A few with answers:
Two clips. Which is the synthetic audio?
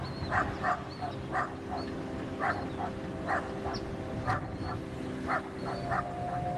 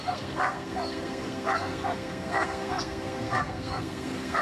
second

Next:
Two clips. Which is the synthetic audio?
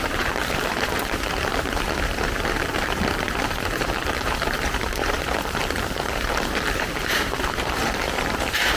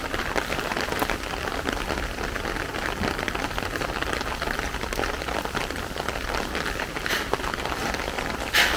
first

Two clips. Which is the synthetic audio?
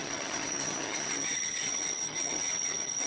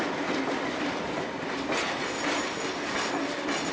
first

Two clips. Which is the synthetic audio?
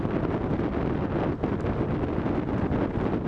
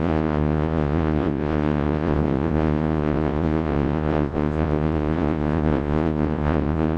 second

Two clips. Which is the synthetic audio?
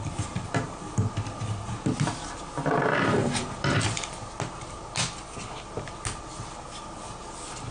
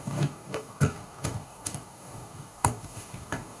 second